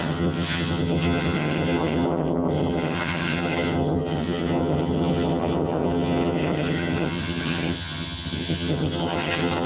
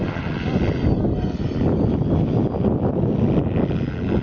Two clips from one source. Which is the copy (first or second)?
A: first